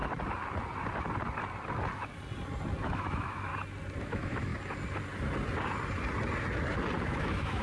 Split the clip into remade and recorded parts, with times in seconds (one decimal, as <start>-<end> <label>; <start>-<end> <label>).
0.0-2.8 recorded; 2.8-3.5 remade; 3.5-4.0 recorded; 4.0-4.5 remade; 4.5-7.0 recorded; 7.0-7.6 remade